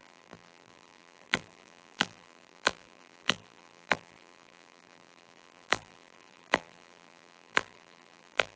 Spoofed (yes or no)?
yes